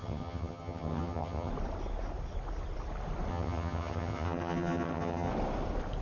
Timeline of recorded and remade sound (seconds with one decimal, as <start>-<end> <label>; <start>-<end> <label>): 0.0-1.5 remade; 1.5-3.3 recorded; 3.3-5.3 remade; 5.3-6.0 recorded